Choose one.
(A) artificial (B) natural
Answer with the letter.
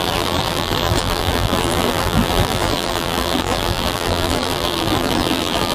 A